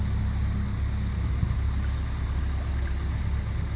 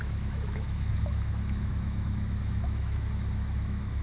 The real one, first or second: first